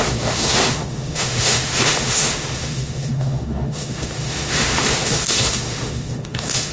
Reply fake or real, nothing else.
fake